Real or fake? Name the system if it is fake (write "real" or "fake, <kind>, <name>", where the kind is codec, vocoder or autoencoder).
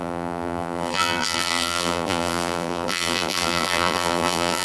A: fake, vocoder, BigVGAN v2